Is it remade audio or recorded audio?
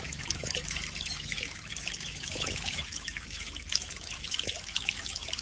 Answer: remade